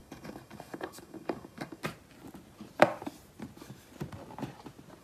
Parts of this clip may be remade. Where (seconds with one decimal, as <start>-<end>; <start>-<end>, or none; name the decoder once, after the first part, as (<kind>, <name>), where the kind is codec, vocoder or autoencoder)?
0.0-1.8 (codec, DAC)